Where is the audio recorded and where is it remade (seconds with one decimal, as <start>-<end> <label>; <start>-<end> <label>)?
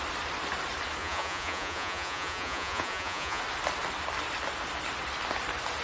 0.0-1.0 recorded; 1.0-3.4 remade; 3.4-5.8 recorded